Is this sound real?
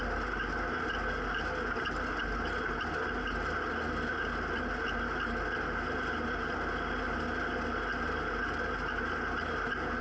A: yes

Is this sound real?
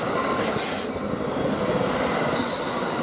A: yes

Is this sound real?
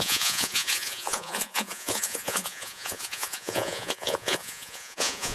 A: no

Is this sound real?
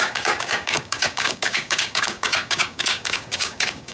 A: no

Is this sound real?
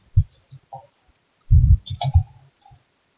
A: yes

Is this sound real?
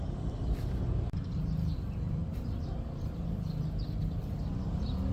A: yes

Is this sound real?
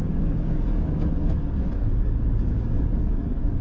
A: no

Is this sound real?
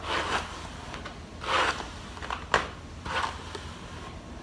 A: yes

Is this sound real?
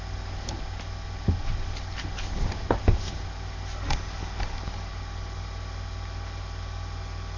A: yes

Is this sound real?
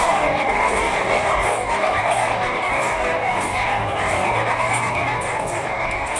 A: no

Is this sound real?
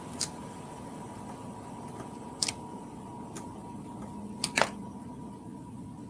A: yes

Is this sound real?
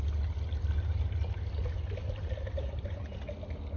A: yes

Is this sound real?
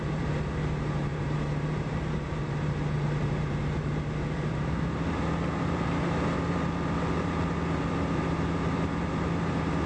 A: no